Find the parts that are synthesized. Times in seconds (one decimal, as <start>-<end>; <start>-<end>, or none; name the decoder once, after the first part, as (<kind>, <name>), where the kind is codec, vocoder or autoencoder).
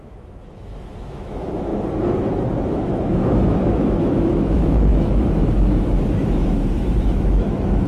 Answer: 0.0-1.7 (autoencoder, DAC-VAE); 2.7-7.9